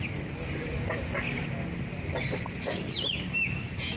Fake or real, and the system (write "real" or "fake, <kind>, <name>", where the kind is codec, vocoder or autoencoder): real